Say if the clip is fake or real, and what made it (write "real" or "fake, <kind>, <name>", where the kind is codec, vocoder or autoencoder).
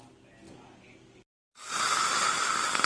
real